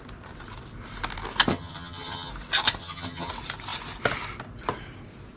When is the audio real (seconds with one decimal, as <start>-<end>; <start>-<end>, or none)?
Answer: 0.0-1.5; 2.3-2.8; 3.3-5.4